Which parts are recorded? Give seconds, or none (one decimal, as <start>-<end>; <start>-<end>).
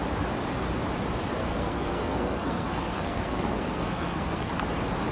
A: 0.0-1.4; 4.5-5.1